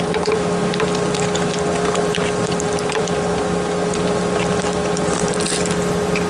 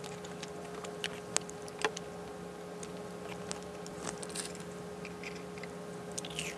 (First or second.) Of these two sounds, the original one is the second